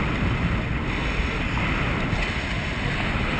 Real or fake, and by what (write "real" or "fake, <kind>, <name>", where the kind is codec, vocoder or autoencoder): real